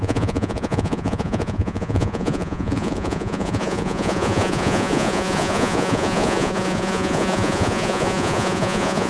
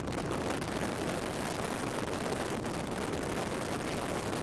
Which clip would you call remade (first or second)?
first